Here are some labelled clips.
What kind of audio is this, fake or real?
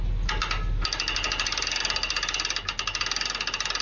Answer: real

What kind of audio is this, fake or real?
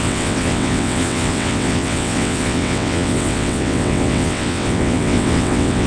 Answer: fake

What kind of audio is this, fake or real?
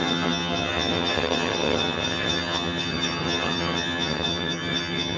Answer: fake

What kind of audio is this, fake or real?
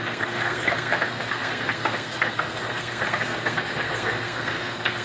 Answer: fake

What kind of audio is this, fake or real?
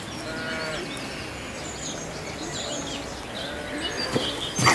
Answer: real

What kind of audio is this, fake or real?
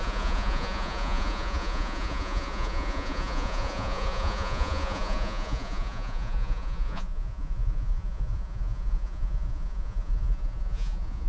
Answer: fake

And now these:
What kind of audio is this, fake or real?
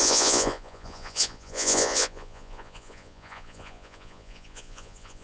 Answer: fake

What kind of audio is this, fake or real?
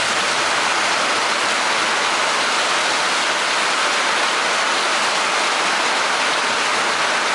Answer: real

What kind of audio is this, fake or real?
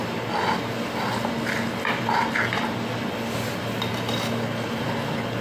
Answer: real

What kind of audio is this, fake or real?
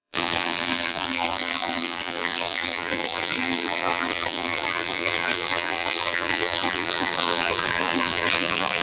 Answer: fake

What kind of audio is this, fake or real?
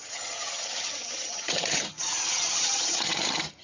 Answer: fake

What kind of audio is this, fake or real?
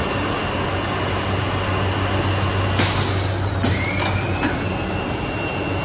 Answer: real